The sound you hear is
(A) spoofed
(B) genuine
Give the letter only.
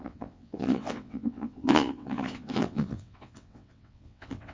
A